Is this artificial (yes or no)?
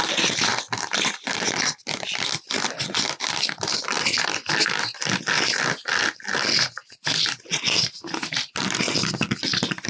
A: no